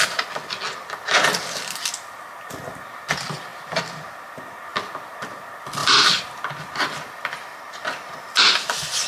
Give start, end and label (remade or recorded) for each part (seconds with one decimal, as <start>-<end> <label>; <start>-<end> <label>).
0.0-5.8 recorded; 5.8-7.6 remade; 7.6-9.1 recorded